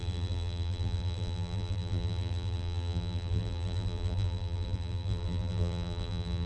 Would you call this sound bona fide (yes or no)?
no